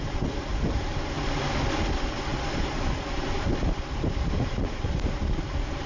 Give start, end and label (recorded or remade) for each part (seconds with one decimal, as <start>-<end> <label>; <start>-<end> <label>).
0.0-0.5 recorded; 0.5-1.8 remade; 1.8-2.3 recorded; 2.3-5.9 remade

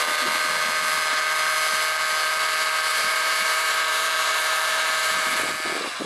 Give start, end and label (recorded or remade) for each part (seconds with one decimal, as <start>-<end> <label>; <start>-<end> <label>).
0.0-2.9 recorded; 2.9-5.5 remade; 5.5-6.1 recorded